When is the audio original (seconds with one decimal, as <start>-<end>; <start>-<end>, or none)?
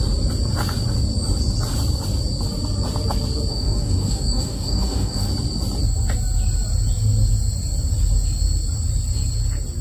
0.0-3.5; 5.3-9.8